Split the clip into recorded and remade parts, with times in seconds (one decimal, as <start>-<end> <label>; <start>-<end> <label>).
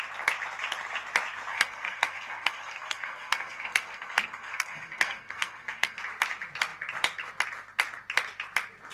0.0-1.5 recorded; 1.5-6.0 remade; 6.0-8.9 recorded